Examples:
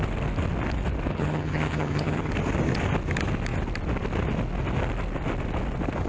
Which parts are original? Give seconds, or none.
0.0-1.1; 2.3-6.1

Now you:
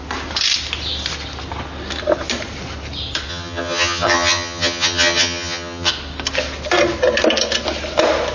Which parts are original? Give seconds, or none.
0.0-3.3; 5.9-8.3

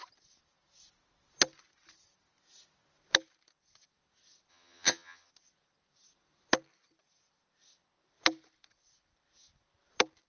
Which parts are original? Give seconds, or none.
0.0-4.5; 5.3-10.3